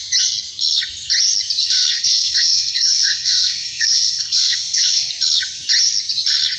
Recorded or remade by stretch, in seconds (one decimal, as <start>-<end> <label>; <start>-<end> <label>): 0.0-1.6 recorded; 1.6-5.1 remade; 5.1-6.6 recorded